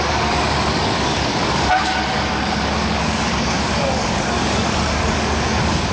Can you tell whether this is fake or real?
fake